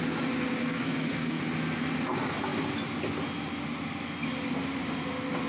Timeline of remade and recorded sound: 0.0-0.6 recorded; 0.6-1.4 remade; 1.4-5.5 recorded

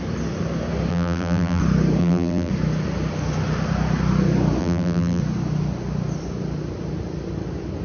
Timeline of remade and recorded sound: 0.0-0.9 recorded; 0.9-1.6 remade; 1.6-2.0 recorded; 2.0-2.5 remade; 2.5-4.6 recorded; 4.6-5.2 remade; 5.2-7.8 recorded

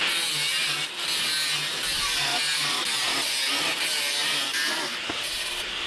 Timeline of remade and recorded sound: 0.0-5.9 recorded

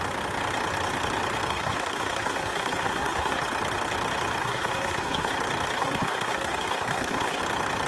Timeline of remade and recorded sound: 0.0-1.5 recorded; 1.5-3.4 remade; 3.4-4.4 recorded; 4.4-5.3 remade; 5.3-5.8 recorded; 5.8-7.4 remade; 7.4-7.9 recorded

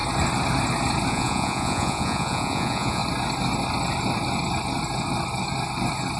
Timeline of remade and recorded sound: 0.0-1.1 recorded; 1.1-3.0 remade; 3.0-6.2 recorded

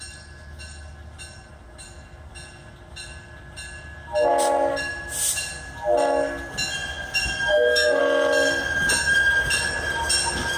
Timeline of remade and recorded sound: 0.0-7.5 recorded; 7.5-8.0 remade; 8.0-10.6 recorded

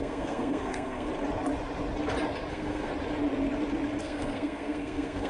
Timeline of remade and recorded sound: 0.0-1.1 remade; 1.1-2.5 recorded; 2.5-2.9 remade; 2.9-4.0 recorded; 4.0-5.3 remade

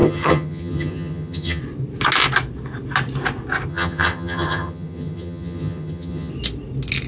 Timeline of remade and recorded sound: 0.0-1.6 remade; 1.6-3.7 recorded; 3.7-6.3 remade; 6.3-7.1 recorded